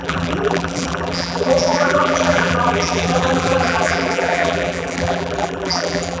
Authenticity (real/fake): fake